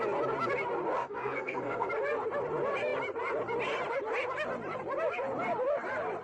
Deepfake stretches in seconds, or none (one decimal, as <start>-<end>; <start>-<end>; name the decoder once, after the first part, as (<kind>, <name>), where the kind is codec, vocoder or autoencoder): 1.0-1.9 (codec, SNAC)